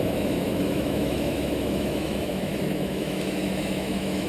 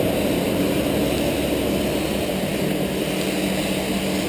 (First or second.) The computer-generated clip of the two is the first